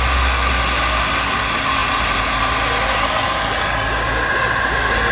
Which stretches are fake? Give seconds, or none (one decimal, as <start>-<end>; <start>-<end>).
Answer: none